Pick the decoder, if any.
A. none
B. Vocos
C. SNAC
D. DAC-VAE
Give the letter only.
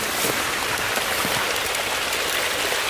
A